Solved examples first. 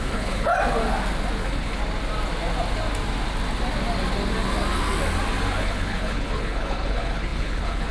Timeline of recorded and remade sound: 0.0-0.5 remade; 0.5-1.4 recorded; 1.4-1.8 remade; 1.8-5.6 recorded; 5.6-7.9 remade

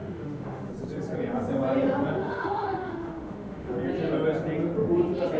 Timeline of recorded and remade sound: 0.0-0.7 remade; 0.7-2.2 recorded; 2.2-3.7 remade; 3.7-5.4 recorded

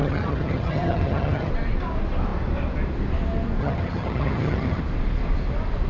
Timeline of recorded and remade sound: 0.0-1.5 remade; 1.5-3.6 recorded; 3.6-4.8 remade; 4.8-5.9 recorded

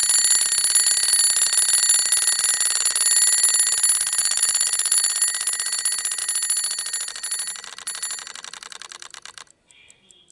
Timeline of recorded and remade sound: 0.0-4.2 recorded; 4.2-5.1 remade; 5.1-10.3 recorded

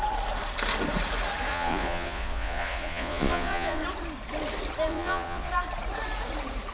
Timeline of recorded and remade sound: 0.0-1.5 recorded; 1.5-3.8 remade; 3.8-4.9 recorded; 4.9-5.5 remade; 5.5-6.7 recorded

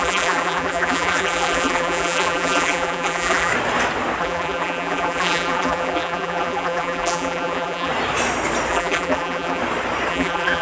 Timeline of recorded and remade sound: 0.0-3.5 remade; 3.5-4.2 recorded; 4.2-7.9 remade; 7.9-8.7 recorded; 8.7-9.6 remade; 9.6-10.1 recorded; 10.1-10.6 remade